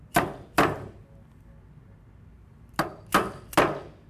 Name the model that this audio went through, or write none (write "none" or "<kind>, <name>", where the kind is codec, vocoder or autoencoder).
none